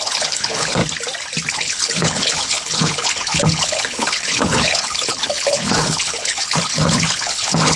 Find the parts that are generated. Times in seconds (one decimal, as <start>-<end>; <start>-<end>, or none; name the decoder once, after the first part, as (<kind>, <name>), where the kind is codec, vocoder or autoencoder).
0.0-0.8 (codec, HILCodec); 1.5-7.8